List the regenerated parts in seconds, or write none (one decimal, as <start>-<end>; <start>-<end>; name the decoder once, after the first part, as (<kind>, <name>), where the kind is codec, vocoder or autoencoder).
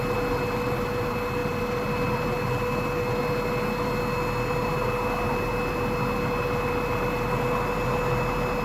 none